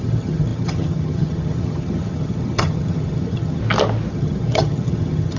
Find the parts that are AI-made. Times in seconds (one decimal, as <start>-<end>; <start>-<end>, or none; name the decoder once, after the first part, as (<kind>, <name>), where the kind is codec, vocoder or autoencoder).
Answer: 0.0-3.6 (vocoder, HiFi-GAN); 4.1-5.4